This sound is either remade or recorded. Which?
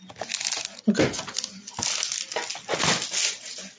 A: recorded